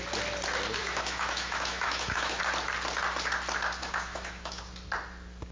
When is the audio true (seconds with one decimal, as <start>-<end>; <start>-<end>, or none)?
0.0-0.8; 2.4-3.8; 4.6-5.5